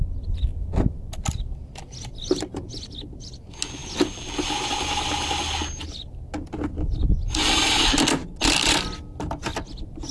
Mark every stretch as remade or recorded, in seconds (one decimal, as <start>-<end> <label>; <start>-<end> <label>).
0.0-10.1 recorded